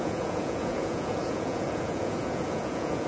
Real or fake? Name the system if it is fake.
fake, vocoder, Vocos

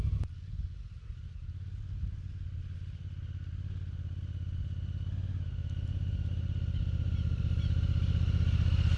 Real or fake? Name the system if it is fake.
real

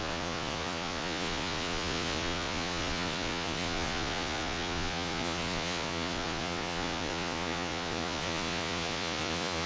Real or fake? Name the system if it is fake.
fake, vocoder, Vocos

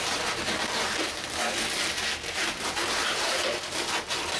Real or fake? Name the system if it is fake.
real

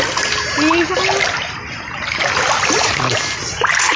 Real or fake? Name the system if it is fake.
real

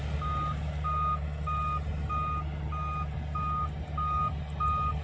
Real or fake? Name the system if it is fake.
real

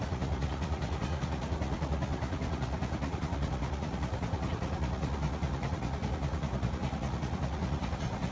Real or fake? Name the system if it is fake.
fake, vocoder, Vocos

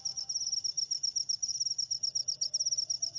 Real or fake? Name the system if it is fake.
real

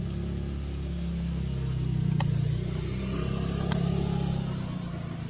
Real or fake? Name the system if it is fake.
real